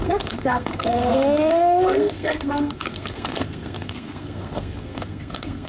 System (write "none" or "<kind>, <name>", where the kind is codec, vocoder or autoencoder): codec, SNAC